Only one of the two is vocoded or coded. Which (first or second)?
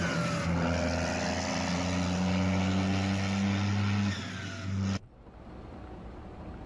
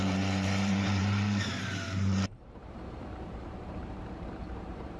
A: second